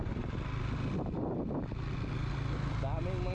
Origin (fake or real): real